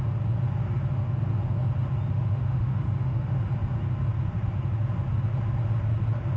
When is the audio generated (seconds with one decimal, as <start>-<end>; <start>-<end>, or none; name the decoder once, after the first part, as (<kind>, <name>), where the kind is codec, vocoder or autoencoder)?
2.1-3.5 (autoencoder, DAC-VAE)